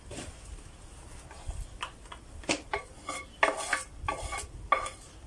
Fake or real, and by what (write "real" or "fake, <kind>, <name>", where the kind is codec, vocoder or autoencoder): real